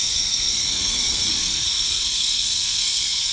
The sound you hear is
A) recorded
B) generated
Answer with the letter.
B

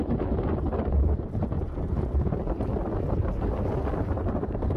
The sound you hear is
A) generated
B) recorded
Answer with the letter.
B